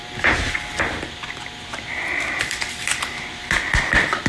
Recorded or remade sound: remade